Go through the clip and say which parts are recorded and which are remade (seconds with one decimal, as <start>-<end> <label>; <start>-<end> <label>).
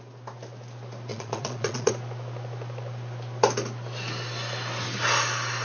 0.0-1.1 recorded; 1.1-1.9 remade; 1.9-5.6 recorded